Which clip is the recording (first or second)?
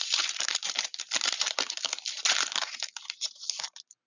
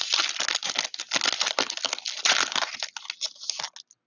second